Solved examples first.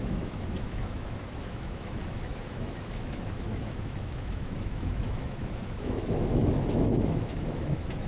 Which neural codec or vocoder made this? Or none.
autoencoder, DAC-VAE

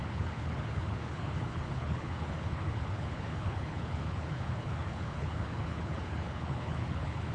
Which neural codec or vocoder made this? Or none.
codec, HILCodec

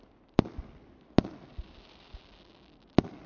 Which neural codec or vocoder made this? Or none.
none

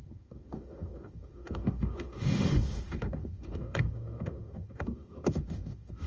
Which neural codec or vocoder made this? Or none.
autoencoder, DAC-VAE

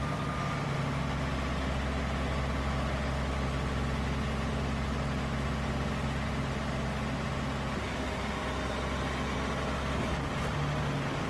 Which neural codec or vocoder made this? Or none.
none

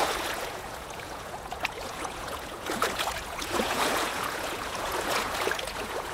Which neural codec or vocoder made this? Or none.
vocoder, Vocos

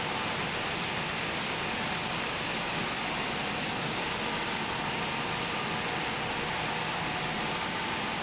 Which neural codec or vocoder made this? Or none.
none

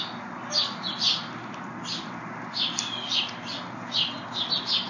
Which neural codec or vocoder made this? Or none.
none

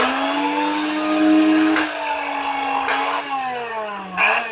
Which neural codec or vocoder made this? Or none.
none